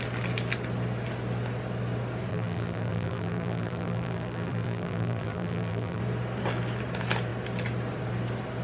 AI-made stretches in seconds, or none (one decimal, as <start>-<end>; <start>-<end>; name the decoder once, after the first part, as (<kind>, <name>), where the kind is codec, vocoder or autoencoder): 2.3-6.0 (vocoder, BigVGAN v2)